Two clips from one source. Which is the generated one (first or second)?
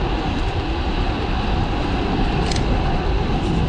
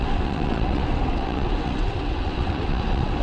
second